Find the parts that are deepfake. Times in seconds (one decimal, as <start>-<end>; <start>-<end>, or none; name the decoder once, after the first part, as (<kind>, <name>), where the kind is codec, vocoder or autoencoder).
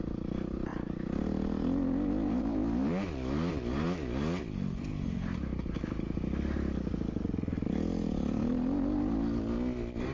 none